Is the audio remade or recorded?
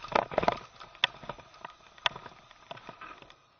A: recorded